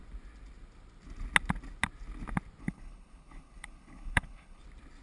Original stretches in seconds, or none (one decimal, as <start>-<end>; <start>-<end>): 0.0-2.6; 4.6-5.0